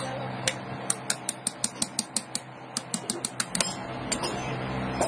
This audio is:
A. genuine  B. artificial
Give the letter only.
A